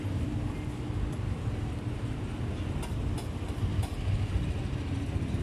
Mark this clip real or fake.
real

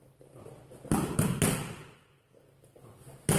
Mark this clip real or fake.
real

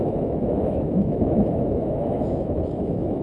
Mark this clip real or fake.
fake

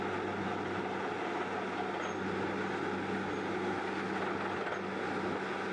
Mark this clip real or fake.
real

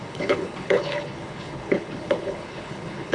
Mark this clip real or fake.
fake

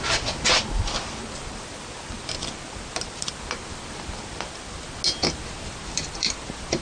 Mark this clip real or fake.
real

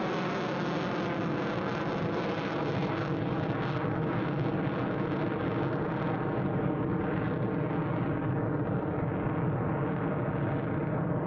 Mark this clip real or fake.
real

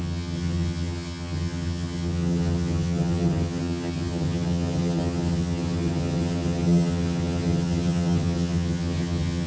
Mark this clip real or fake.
fake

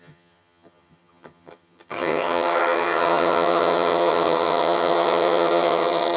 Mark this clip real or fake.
fake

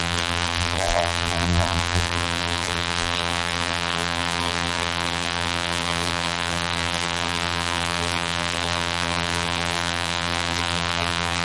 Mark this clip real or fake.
fake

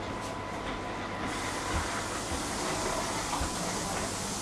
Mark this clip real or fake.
real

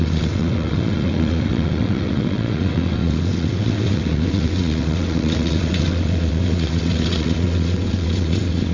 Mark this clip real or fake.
fake